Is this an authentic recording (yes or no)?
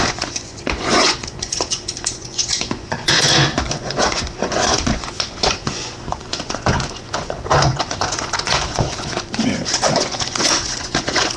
no